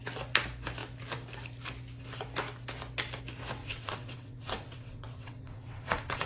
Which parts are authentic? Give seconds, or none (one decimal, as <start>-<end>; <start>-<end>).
0.0-3.6